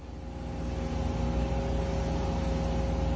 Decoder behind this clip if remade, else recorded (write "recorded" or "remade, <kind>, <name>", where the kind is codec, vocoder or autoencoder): recorded